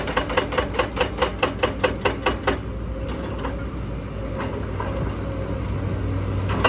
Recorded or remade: recorded